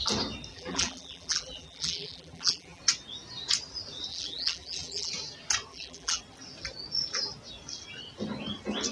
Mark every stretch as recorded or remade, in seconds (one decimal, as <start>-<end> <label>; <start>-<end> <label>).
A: 0.0-0.5 recorded; 0.5-2.8 remade; 2.8-4.1 recorded; 4.1-5.1 remade; 5.1-5.7 recorded; 5.7-6.2 remade; 6.2-8.9 recorded